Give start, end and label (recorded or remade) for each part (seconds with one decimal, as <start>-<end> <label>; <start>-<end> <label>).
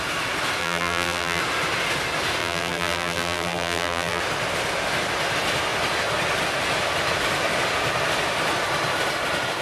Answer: 0.0-0.6 recorded; 0.6-1.4 remade; 1.4-2.4 recorded; 2.4-4.2 remade; 4.2-9.6 recorded